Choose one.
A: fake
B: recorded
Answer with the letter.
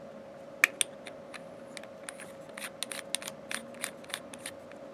B